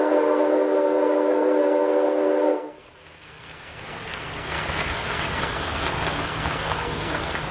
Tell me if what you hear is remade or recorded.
remade